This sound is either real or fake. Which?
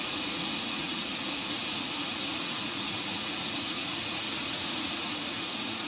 fake